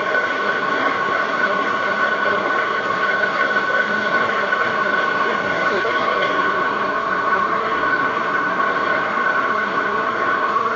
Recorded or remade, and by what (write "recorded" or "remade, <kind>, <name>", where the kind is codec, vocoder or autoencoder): remade, codec, SNAC